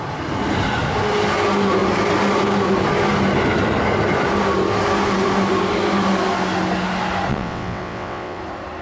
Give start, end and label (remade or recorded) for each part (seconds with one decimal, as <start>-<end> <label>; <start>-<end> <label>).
0.0-7.3 recorded; 7.3-8.4 remade; 8.4-8.8 recorded